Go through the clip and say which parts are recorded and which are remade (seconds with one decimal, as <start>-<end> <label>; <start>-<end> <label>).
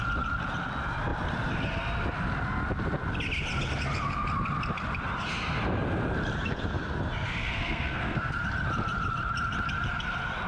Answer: 0.0-7.4 recorded; 7.4-8.3 remade; 8.3-10.5 recorded